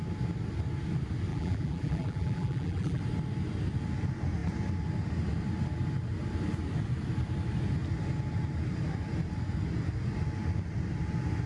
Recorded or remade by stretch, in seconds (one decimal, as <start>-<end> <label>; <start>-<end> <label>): 0.0-1.3 recorded; 1.3-3.0 remade; 3.0-11.5 recorded